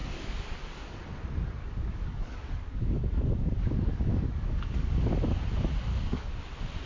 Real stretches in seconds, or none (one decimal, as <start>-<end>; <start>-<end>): 1.0-1.6; 5.0-5.9; 6.4-6.9